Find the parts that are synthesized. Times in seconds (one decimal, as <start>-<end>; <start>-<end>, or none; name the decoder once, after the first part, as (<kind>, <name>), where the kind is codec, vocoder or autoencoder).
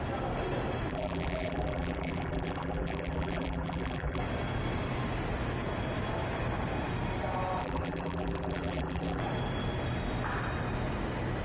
0.9-4.2 (vocoder, BigVGAN v2); 7.6-9.2